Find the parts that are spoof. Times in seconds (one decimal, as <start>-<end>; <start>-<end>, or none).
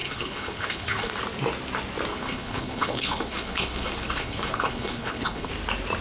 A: 0.0-1.1; 2.1-5.5